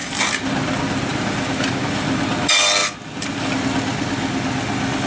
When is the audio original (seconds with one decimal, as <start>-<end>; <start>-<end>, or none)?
0.5-1.1; 1.7-5.1